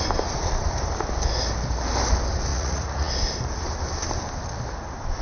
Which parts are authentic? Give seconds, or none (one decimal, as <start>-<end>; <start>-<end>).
0.0-2.5; 3.1-5.2